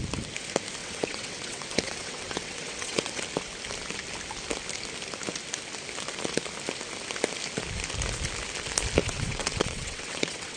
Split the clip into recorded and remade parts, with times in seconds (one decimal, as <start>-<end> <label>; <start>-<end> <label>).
0.0-0.8 recorded; 0.8-3.2 remade; 3.2-9.0 recorded; 9.0-10.6 remade